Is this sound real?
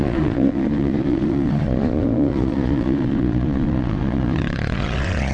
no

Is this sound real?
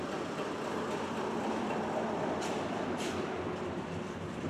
no